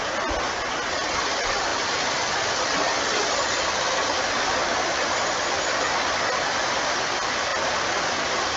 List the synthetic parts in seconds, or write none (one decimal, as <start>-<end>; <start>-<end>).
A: 1.7-2.5; 4.6-5.2